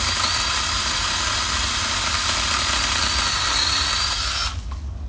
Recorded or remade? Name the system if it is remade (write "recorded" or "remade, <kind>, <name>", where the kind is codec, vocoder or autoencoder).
recorded